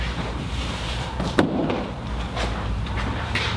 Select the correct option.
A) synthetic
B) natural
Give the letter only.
A